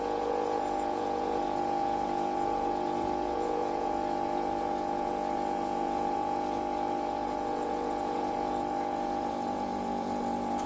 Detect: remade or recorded remade